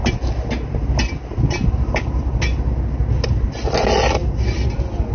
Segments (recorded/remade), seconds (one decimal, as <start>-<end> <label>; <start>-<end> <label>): 0.0-5.1 recorded